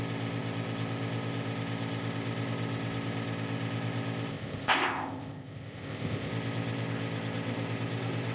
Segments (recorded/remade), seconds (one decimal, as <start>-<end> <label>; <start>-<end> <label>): 0.0-4.3 recorded; 4.3-6.3 remade; 6.3-8.3 recorded